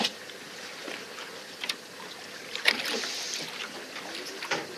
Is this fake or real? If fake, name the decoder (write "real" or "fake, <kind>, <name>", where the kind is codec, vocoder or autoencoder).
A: real